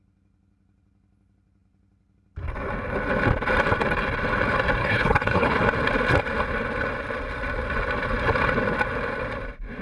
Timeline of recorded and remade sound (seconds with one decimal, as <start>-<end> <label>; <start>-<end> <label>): 0.0-4.8 recorded; 4.8-5.6 remade; 5.6-9.8 recorded